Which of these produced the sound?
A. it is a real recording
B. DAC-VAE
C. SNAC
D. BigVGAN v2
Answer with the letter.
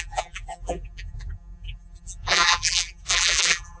D